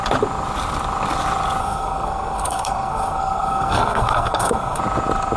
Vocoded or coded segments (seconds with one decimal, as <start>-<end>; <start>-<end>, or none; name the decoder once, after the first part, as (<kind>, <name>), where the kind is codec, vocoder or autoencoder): 1.6-4.8 (codec, SNAC)